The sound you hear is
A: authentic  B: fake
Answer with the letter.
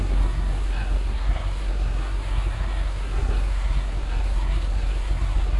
B